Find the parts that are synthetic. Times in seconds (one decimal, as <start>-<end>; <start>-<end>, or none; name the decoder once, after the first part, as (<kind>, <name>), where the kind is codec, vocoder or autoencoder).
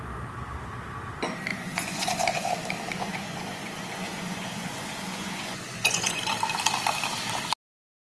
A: 1.5-2.5 (vocoder, Vocos); 3.0-6.3